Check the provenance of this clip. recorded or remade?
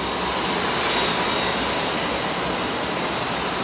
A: recorded